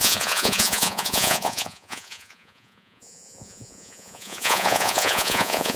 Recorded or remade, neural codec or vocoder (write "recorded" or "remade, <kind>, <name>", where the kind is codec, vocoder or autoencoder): remade, vocoder, Vocos